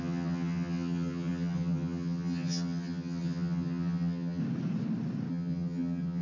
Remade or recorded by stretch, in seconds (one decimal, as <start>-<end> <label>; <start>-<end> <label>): 0.0-4.4 remade; 4.4-5.3 recorded; 5.3-6.2 remade